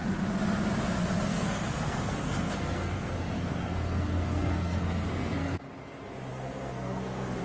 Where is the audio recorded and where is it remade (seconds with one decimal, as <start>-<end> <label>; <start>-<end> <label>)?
0.0-1.3 recorded; 1.3-5.7 remade; 5.7-6.3 recorded; 6.3-7.4 remade